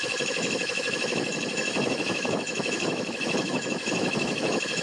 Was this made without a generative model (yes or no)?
no